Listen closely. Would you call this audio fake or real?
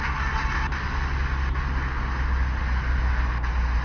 real